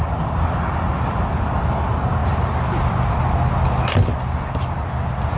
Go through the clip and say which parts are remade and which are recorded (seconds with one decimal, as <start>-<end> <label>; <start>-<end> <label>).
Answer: 0.0-5.4 recorded